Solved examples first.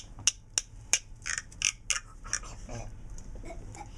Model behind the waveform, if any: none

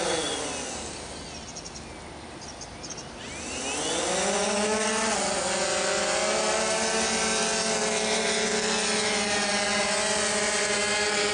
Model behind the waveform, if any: none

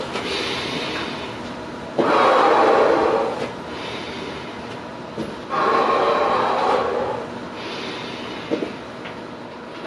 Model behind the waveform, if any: none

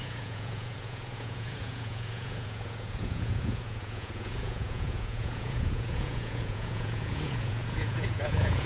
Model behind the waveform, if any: vocoder, Vocos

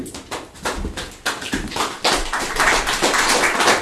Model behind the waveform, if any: none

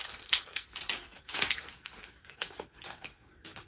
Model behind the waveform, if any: codec, SNAC